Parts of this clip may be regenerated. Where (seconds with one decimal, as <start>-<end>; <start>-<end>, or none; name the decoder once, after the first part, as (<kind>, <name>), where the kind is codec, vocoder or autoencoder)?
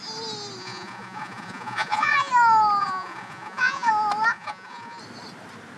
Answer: 0.6-2.3 (vocoder, Vocos); 2.8-3.9; 4.3-5.0